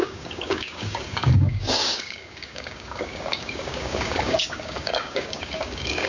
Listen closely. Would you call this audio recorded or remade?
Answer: remade